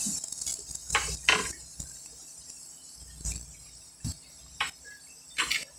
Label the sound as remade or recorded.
recorded